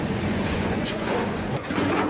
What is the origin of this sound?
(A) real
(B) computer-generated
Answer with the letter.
B